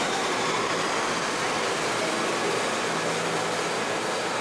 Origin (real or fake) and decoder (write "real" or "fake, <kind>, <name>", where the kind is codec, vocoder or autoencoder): real